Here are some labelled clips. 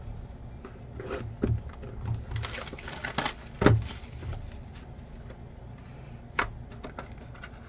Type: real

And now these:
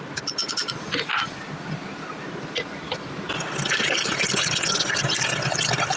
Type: real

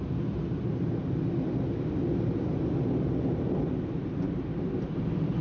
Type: real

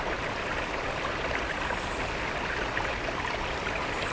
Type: real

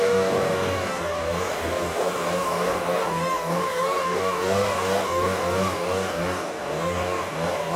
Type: fake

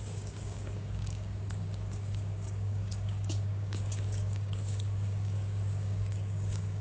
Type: fake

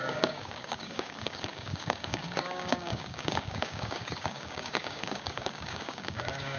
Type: fake